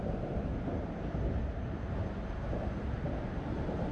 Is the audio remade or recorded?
recorded